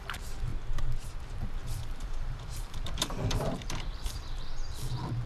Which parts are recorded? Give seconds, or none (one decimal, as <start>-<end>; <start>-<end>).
0.5-1.2